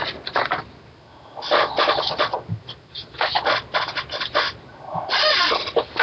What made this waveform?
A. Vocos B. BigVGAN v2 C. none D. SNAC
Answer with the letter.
C